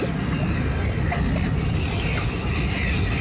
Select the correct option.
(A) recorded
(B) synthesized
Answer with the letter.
A